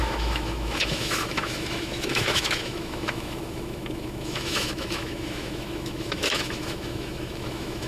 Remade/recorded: remade